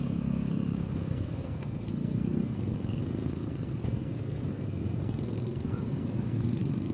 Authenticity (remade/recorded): remade